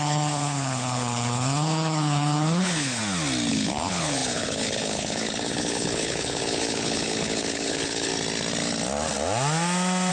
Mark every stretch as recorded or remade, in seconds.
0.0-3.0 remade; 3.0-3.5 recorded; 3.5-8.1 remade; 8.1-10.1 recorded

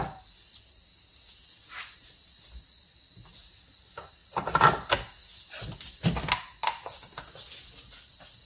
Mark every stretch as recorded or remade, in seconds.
0.0-8.5 recorded

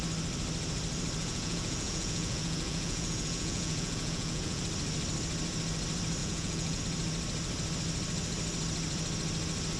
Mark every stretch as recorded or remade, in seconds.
0.0-1.2 recorded; 1.2-4.6 remade; 4.6-6.2 recorded; 6.2-6.8 remade; 6.8-9.8 recorded

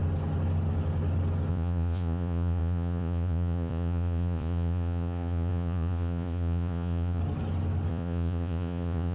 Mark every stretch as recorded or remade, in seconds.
0.0-1.5 recorded; 1.5-7.2 remade; 7.2-7.9 recorded; 7.9-9.1 remade